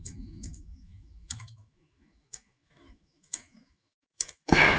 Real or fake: fake